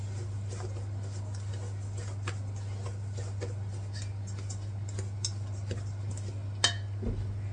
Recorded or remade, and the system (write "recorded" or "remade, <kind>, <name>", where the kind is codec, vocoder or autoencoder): recorded